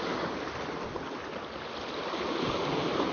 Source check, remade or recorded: recorded